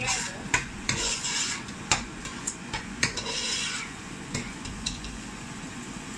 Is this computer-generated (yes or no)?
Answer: yes